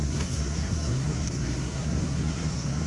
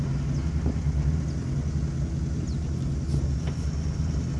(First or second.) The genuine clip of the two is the second